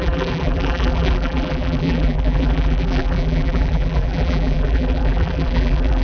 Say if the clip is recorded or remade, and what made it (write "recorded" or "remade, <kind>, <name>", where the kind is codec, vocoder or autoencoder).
remade, vocoder, BigVGAN v2